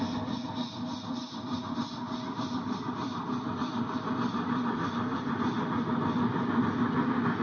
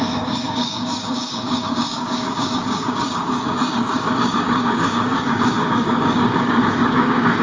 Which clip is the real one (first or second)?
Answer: first